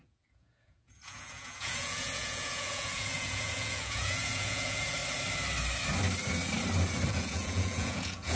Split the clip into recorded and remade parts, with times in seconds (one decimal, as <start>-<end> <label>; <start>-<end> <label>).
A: 0.0-5.0 remade; 5.0-7.1 recorded; 7.1-8.4 remade